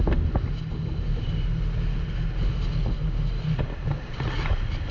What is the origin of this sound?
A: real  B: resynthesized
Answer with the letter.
A